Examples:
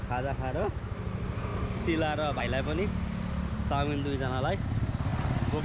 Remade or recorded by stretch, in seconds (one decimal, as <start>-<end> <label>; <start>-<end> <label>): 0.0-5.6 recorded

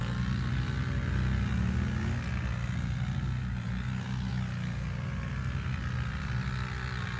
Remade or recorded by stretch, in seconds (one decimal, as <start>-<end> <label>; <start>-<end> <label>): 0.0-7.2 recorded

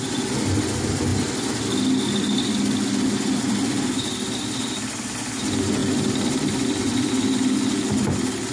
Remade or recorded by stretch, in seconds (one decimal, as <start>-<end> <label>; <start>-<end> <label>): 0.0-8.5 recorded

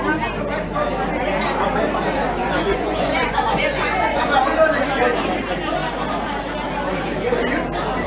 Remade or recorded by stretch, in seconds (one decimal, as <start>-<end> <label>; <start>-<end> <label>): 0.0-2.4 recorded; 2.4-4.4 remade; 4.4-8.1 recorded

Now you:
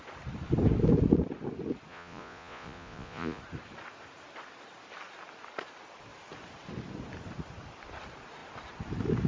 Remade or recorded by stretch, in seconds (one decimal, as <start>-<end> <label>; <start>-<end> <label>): 0.0-1.9 recorded; 1.9-3.4 remade; 3.4-9.3 recorded

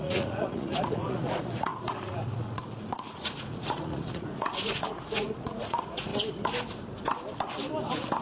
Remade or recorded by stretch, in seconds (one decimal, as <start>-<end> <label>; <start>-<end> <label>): 0.0-6.1 remade; 6.1-8.2 recorded